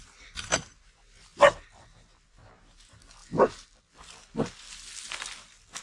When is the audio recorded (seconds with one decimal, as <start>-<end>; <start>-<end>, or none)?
0.0-1.3; 2.7-3.2; 3.8-5.8